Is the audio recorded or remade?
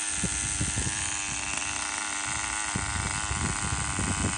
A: recorded